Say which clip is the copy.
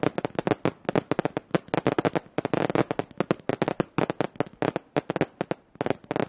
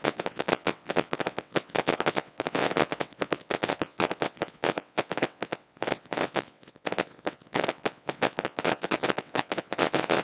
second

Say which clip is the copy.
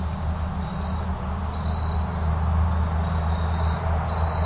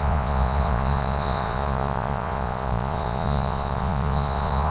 second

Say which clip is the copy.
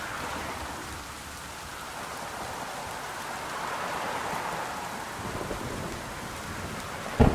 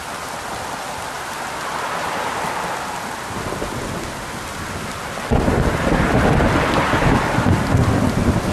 first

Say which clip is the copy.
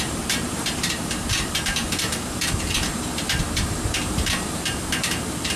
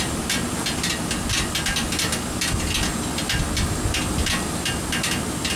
first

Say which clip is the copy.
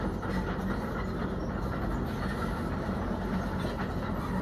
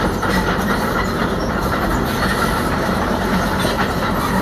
second